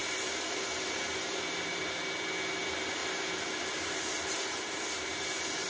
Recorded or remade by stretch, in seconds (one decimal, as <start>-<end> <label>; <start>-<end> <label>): 0.0-1.8 remade; 1.8-3.0 recorded; 3.0-5.7 remade